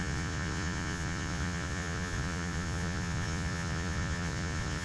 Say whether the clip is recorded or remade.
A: remade